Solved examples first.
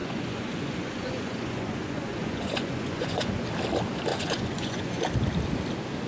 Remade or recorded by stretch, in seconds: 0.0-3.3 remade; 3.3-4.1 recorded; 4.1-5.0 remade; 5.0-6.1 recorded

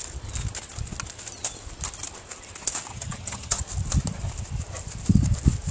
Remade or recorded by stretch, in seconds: 0.0-2.9 recorded; 2.9-3.6 remade; 3.6-5.7 recorded

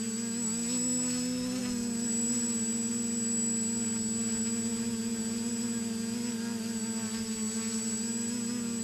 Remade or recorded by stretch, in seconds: 0.0-8.8 recorded

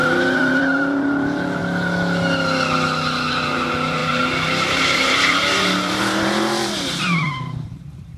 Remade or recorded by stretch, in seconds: 0.0-1.6 remade; 1.6-3.3 recorded; 3.3-8.2 remade